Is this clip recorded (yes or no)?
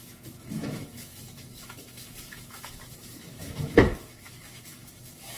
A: no